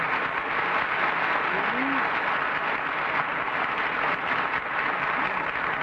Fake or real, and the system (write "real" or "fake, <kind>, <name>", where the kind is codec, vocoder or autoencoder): real